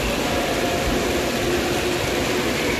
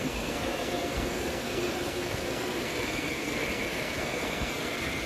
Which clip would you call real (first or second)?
first